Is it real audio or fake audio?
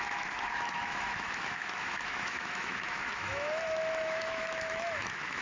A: fake